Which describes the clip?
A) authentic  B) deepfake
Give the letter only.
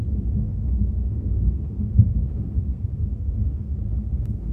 B